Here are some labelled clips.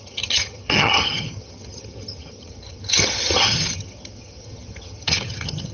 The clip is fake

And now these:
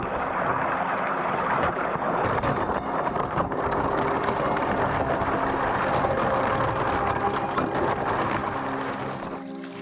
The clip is real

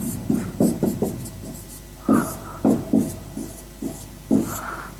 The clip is real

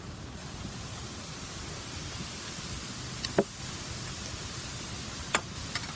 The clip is real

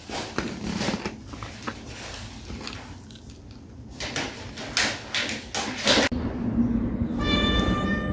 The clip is real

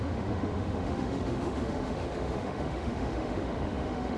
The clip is fake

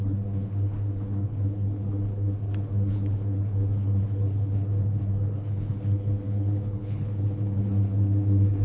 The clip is fake